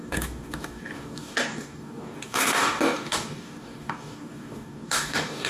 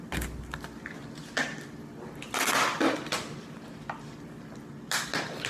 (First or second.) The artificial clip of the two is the first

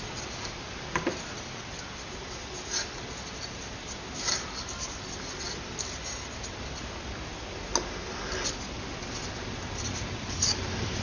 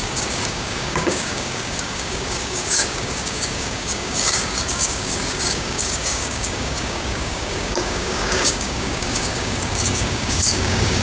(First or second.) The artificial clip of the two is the second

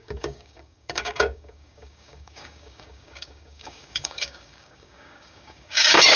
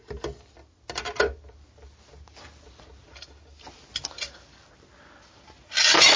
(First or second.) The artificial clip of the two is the first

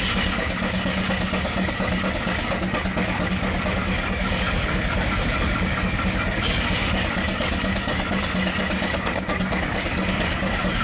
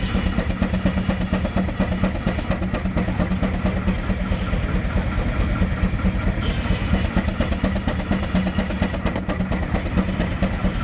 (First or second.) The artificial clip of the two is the first